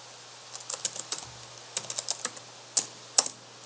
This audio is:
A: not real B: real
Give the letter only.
B